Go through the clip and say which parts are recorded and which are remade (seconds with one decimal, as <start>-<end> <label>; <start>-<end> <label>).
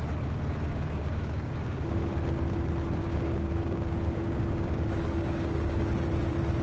0.0-0.7 recorded; 0.7-2.1 remade; 2.1-3.0 recorded; 3.0-5.9 remade; 5.9-6.6 recorded